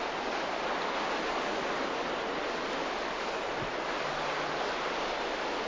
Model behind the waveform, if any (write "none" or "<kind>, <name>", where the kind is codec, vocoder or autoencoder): none